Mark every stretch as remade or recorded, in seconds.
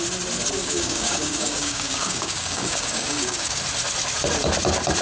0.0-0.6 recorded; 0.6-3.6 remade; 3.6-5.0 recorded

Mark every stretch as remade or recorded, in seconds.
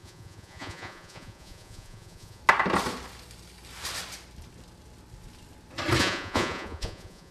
0.0-2.4 remade; 2.4-6.0 recorded; 6.0-7.3 remade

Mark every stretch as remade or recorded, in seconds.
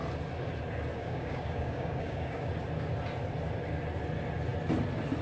0.0-1.0 recorded; 1.0-2.5 remade; 2.5-5.2 recorded